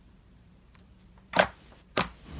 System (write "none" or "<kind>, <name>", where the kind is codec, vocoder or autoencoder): vocoder, BigVGAN v2